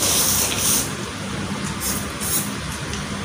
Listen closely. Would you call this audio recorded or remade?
remade